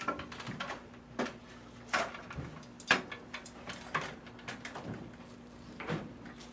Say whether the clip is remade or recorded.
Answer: recorded